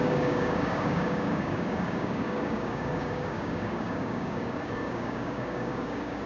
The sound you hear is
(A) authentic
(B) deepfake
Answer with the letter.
B